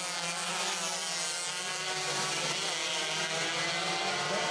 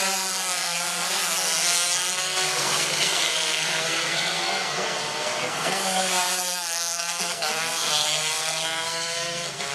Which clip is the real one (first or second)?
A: first